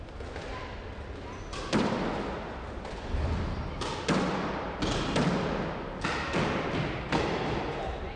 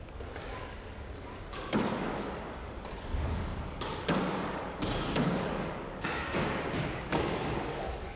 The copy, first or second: second